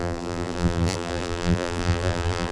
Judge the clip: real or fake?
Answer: fake